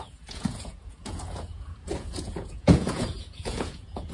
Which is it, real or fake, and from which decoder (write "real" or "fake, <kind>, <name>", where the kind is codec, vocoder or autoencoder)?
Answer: fake, vocoder, Vocos